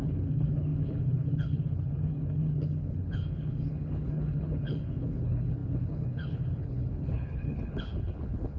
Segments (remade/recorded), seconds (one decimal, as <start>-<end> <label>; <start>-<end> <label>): 0.0-8.6 remade